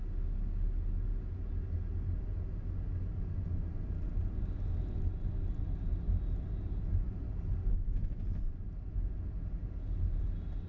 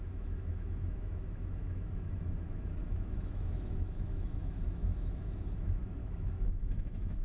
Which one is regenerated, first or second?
second